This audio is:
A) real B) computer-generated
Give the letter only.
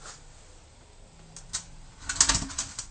A